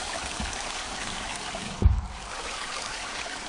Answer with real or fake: fake